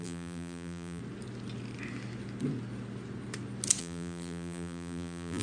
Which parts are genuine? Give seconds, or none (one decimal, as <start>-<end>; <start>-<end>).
1.0-3.8